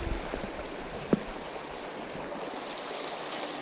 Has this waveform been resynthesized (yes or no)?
no